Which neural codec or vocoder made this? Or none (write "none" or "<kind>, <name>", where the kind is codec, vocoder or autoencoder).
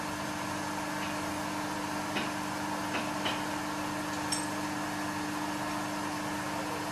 none